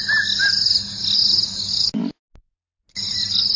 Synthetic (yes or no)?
no